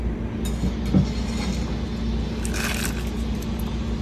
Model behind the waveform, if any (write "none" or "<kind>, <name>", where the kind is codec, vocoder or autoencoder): none